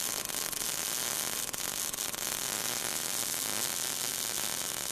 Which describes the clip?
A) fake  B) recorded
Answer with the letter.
B